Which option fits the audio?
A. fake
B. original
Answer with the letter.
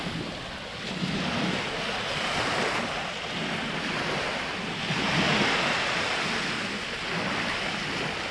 B